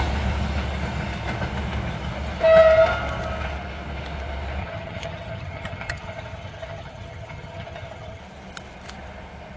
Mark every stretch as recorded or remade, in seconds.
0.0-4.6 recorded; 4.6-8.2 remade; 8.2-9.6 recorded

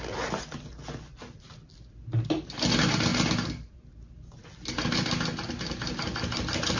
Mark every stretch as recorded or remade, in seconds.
0.0-6.8 recorded